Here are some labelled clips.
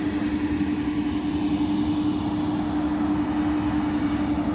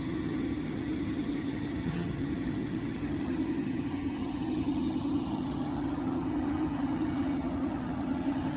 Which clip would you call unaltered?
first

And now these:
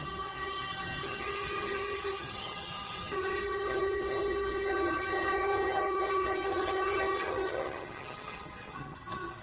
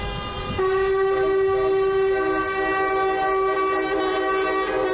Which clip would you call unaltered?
second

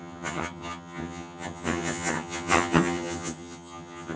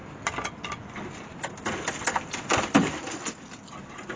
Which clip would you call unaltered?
second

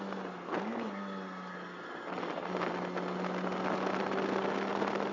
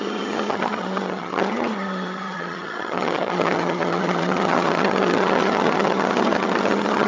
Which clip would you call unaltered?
first